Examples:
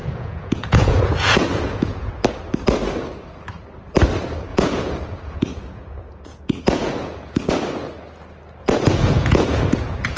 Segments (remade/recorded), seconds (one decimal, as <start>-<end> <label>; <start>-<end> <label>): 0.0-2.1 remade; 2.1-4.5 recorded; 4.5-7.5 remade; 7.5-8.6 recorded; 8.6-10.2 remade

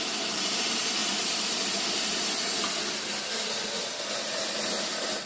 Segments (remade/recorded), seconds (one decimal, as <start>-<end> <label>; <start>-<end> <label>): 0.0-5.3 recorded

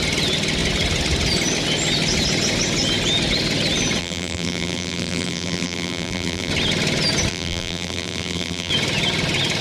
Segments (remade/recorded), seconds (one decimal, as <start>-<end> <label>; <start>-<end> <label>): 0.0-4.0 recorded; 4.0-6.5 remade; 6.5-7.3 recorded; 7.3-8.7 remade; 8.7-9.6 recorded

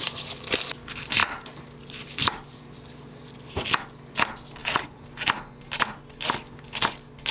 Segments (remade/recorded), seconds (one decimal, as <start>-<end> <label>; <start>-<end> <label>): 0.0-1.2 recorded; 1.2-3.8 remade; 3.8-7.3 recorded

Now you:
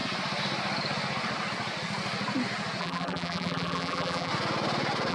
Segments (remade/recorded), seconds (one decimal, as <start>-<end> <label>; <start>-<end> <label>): 0.0-2.8 recorded; 2.8-4.3 remade; 4.3-5.1 recorded

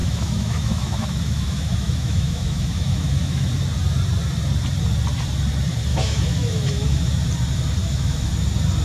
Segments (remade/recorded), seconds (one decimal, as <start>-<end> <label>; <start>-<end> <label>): 0.0-3.5 remade; 3.5-5.9 recorded; 5.9-7.0 remade; 7.0-7.8 recorded; 7.8-8.3 remade; 8.3-8.8 recorded

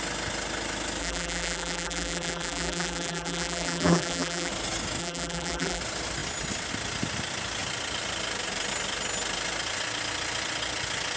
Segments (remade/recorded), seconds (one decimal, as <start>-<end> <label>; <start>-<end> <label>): 0.0-1.0 recorded; 1.0-4.5 remade; 4.5-5.0 recorded; 5.0-5.8 remade; 5.8-11.2 recorded

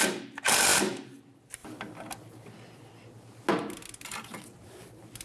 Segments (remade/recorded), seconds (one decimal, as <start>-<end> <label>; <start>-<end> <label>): 0.0-5.2 recorded